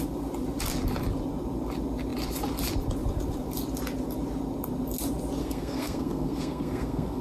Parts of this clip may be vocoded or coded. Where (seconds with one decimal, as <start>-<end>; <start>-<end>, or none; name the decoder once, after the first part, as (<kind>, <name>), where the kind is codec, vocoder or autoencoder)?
5.4-7.2 (codec, SNAC)

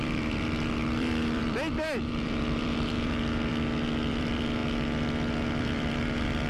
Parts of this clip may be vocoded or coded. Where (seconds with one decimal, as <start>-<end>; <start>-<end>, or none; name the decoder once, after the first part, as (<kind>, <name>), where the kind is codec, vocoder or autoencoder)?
0.0-3.5 (vocoder, BigVGAN v2); 4.1-4.6; 5.6-6.5